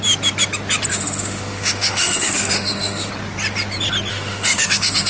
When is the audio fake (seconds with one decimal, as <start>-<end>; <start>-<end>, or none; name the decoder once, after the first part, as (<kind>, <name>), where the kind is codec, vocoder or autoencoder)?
0.9-3.1 (autoencoder, DAC-VAE); 4.1-5.1